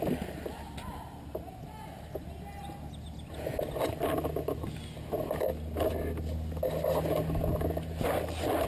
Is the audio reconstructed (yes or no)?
no